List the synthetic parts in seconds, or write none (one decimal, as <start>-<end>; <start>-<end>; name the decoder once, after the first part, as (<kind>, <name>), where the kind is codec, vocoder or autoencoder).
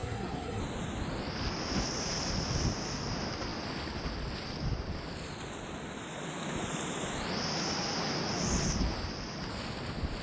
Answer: 0.0-0.6 (codec, SNAC)